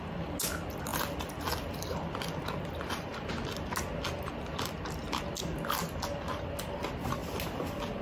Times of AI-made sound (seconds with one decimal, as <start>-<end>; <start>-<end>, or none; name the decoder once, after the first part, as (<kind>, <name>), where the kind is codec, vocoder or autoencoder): none